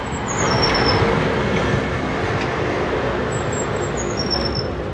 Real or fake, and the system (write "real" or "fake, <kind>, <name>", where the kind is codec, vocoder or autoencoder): real